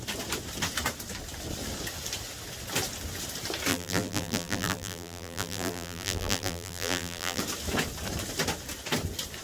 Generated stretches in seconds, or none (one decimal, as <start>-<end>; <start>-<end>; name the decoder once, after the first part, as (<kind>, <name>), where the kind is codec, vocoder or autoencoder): 3.7-7.4 (vocoder, BigVGAN v2)